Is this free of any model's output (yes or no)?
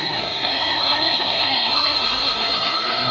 no